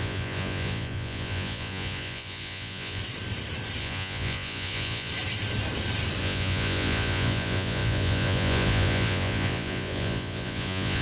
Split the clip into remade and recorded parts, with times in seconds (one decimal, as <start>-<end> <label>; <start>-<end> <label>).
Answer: 0.0-3.0 remade; 3.0-3.8 recorded; 3.8-5.1 remade; 5.1-6.2 recorded; 6.2-11.0 remade